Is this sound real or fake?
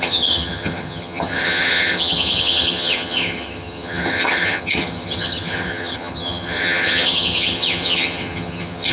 fake